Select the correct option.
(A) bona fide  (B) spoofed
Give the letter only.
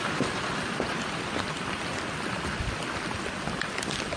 A